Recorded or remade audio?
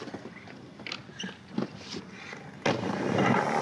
recorded